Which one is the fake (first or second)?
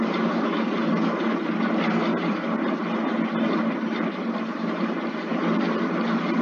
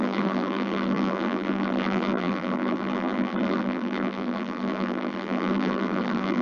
second